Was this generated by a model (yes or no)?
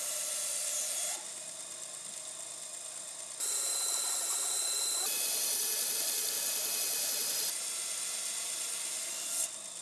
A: no